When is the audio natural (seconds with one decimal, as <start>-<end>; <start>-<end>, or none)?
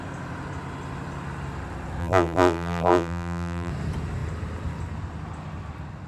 0.0-2.0; 3.7-6.1